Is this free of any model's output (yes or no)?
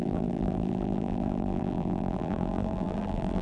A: no